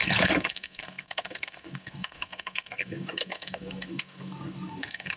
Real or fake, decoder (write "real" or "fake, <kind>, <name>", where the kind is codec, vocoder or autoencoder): fake, codec, SNAC